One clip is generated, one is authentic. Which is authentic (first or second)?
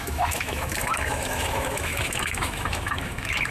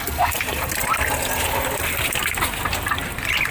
second